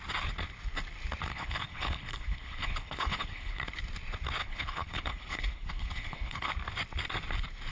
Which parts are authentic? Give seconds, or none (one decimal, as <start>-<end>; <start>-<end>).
0.0-1.3; 3.6-4.4; 6.5-7.7